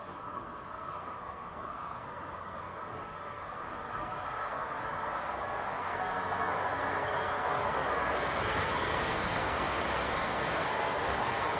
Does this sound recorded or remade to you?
remade